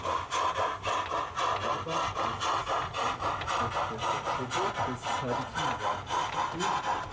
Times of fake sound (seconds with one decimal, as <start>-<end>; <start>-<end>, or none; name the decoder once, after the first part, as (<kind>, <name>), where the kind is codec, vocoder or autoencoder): none